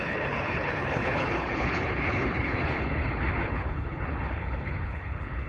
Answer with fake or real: fake